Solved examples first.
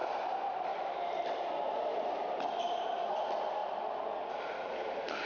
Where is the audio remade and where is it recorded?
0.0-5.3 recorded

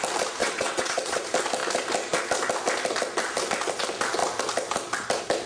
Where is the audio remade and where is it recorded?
0.0-0.4 recorded; 0.4-1.2 remade; 1.2-5.5 recorded

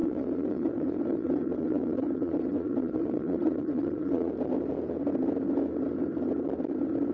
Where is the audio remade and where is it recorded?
0.0-4.3 remade; 4.3-7.1 recorded